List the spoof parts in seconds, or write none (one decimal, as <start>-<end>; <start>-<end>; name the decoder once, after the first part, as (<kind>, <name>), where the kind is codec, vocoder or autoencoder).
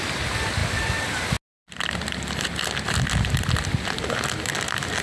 none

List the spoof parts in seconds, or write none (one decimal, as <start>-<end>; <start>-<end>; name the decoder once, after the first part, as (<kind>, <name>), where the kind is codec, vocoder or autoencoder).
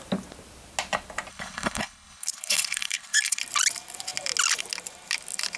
1.3-3.4 (codec, HILCodec)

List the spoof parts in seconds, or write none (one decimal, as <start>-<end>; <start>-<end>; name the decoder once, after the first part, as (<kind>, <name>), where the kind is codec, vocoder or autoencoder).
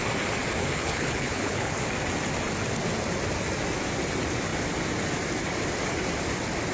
0.6-1.9 (codec, HILCodec)